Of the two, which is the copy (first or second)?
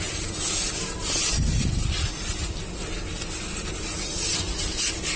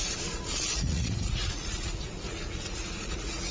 second